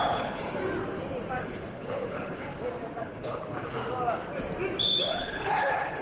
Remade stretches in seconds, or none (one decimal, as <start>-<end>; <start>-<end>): 0.0-0.6; 1.4-2.5; 3.0-3.8; 5.0-6.0